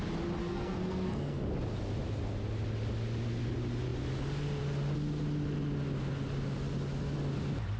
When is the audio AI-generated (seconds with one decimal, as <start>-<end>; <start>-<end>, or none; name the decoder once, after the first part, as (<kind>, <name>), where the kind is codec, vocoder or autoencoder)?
0.4-1.4 (codec, SNAC)